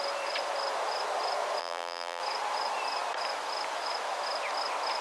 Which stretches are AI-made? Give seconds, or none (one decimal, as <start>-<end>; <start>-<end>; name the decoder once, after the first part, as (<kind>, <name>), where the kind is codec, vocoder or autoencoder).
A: 1.6-2.2 (vocoder, BigVGAN v2)